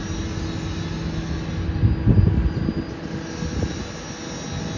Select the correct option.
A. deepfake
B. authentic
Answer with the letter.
B